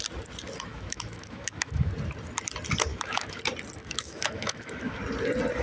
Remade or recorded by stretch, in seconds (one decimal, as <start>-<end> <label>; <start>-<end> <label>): 0.0-0.7 recorded; 0.7-1.9 remade; 1.9-2.9 recorded; 2.9-3.4 remade; 3.4-3.8 recorded; 3.8-5.0 remade; 5.0-5.6 recorded